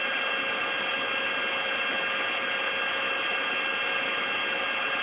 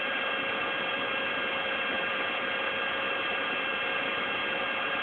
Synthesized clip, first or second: second